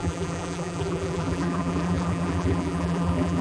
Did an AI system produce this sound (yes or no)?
yes